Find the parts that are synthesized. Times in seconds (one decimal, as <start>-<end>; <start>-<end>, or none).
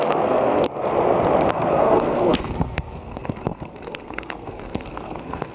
0.0-0.9; 1.5-5.5